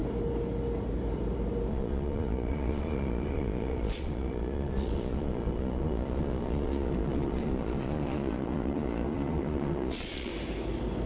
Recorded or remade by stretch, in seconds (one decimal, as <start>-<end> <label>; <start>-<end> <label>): 0.0-1.7 recorded; 1.7-10.3 remade; 10.3-11.1 recorded